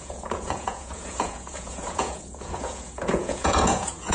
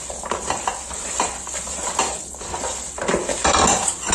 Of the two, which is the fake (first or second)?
first